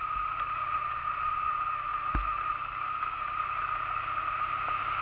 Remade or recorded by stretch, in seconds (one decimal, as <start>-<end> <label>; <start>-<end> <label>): 0.0-0.6 recorded; 0.6-1.5 remade; 1.5-5.0 recorded